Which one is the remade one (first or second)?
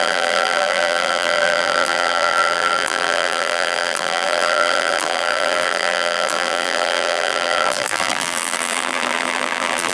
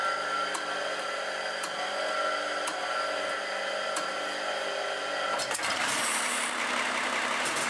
first